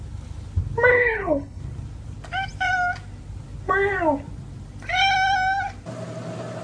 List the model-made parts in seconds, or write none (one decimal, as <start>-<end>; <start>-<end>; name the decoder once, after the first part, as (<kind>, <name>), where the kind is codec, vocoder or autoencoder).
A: 0.9-1.6 (codec, HILCodec)